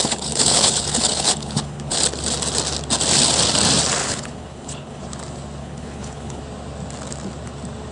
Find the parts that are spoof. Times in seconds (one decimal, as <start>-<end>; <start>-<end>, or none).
0.0-2.0; 4.0-5.0; 5.6-6.4